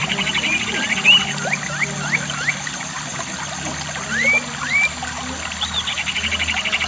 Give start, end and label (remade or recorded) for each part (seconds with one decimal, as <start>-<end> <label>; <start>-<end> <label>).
0.0-6.9 recorded